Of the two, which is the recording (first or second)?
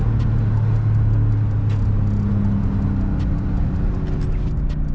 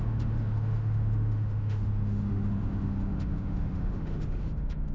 first